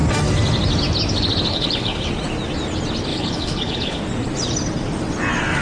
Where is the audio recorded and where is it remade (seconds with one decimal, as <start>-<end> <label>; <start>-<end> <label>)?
0.0-1.5 recorded; 1.5-2.1 remade; 2.1-3.1 recorded; 3.1-4.0 remade; 4.0-5.6 recorded